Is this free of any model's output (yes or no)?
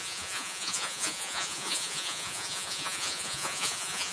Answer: no